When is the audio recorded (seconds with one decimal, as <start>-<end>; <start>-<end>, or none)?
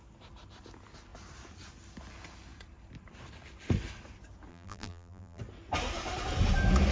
0.0-4.5; 5.4-6.9